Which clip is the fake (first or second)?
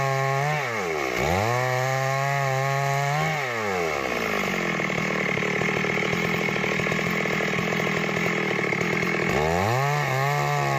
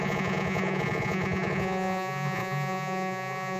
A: second